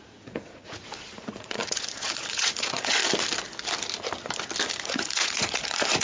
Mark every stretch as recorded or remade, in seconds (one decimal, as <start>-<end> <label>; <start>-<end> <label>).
0.0-3.0 remade; 3.0-4.8 recorded; 4.8-6.0 remade